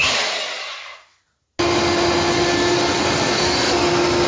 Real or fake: real